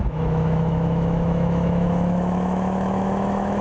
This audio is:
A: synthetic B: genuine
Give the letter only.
A